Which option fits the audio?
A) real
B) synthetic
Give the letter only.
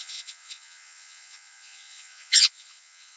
B